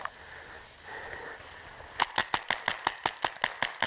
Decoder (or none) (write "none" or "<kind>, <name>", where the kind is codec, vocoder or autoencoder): none